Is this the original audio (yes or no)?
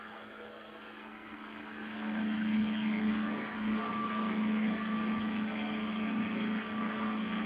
no